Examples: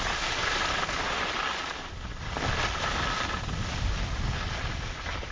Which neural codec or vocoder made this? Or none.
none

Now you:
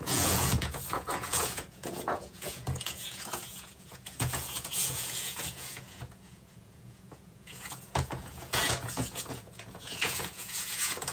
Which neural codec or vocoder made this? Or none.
vocoder, Vocos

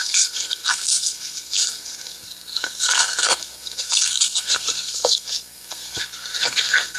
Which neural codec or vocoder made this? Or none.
codec, SNAC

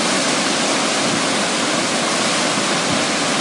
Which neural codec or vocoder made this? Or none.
none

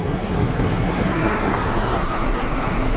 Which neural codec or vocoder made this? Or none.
codec, SNAC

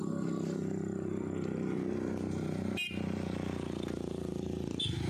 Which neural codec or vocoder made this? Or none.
vocoder, BigVGAN v2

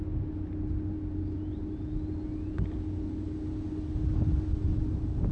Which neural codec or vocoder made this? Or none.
none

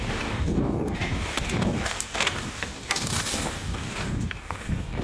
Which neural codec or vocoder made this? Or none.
codec, DAC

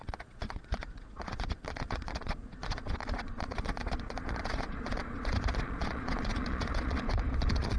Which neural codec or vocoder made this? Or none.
vocoder, Vocos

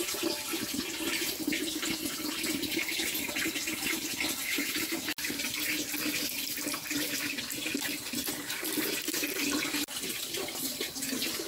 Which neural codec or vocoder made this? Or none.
none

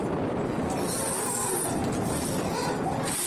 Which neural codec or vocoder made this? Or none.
none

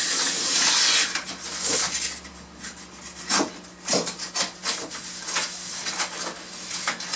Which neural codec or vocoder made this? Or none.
none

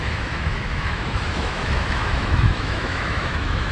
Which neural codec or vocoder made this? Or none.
autoencoder, DAC-VAE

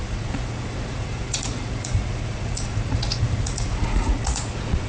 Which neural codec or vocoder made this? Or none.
vocoder, Vocos